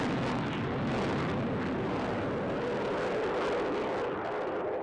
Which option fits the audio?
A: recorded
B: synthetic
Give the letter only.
A